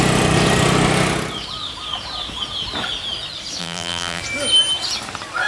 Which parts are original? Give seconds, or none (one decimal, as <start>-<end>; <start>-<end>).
0.0-3.6; 4.2-5.5